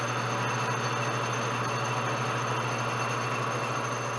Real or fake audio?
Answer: real